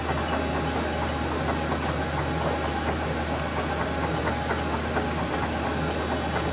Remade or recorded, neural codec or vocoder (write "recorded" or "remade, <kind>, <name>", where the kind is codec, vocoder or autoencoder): recorded